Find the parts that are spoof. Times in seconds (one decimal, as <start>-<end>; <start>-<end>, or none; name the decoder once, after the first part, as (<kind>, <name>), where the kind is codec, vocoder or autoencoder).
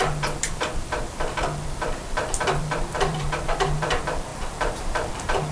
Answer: 0.0-5.5 (vocoder, BigVGAN v2)